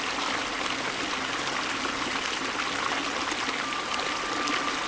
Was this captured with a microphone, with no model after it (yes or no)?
yes